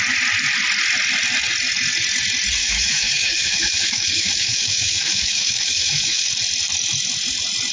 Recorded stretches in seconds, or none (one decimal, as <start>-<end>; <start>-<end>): 0.0-2.6; 6.3-7.7